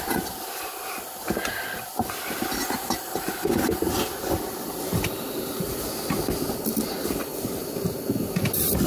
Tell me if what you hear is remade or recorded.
recorded